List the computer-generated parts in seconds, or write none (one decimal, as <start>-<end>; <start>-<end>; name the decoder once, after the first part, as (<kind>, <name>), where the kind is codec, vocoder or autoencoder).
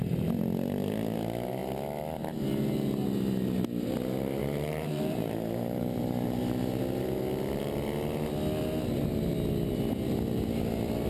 4.4-6.8 (vocoder, BigVGAN v2)